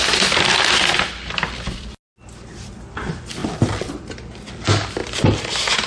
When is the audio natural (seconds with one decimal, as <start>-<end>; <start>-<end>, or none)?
0.0-5.9